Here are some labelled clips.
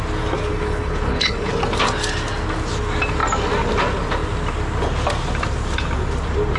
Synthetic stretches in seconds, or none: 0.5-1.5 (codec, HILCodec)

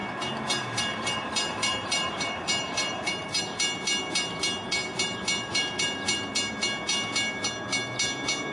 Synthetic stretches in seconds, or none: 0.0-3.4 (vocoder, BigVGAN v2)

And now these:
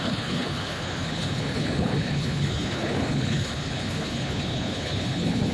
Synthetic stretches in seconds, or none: 0.0-5.5 (codec, HILCodec)

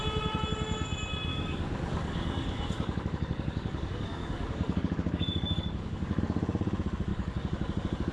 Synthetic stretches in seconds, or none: 1.3-6.2 (codec, DAC); 7.1-8.1